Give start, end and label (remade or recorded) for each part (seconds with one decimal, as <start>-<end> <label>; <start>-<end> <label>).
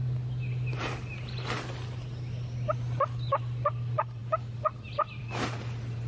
0.0-6.1 recorded